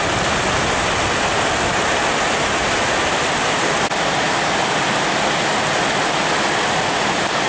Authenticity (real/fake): real